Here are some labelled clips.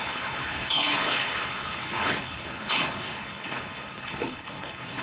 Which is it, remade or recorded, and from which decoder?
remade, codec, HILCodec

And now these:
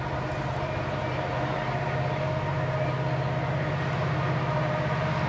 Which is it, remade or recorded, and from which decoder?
recorded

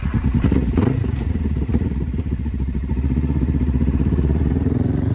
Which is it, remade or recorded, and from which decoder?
remade, vocoder, Vocos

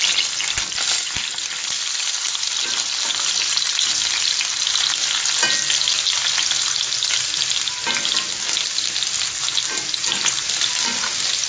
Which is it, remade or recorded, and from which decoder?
recorded